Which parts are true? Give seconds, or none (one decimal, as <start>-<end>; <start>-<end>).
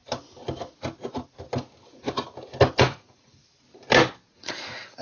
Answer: 0.0-2.8; 3.4-4.3